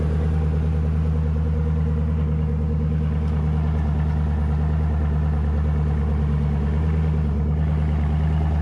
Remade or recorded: recorded